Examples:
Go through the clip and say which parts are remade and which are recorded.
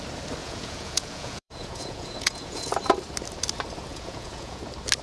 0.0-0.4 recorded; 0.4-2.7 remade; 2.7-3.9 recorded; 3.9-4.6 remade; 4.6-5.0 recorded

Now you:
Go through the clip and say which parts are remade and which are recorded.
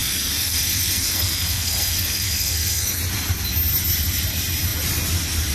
0.0-3.0 remade; 3.0-5.5 recorded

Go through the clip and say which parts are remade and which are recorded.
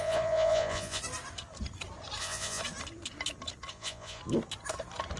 0.0-1.0 remade; 1.0-2.2 recorded; 2.2-2.6 remade; 2.6-3.7 recorded; 3.7-4.2 remade; 4.2-5.2 recorded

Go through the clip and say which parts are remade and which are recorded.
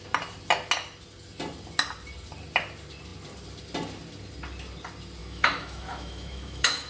0.0-5.2 recorded; 5.2-6.9 remade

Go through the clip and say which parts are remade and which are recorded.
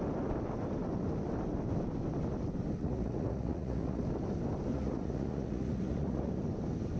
0.0-2.8 recorded; 2.8-4.0 remade; 4.0-4.7 recorded; 4.7-6.3 remade; 6.3-7.0 recorded